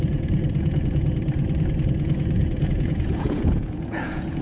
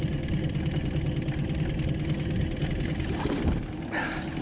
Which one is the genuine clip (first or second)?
second